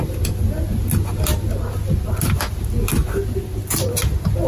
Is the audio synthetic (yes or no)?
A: no